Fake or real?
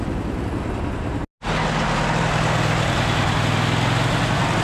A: real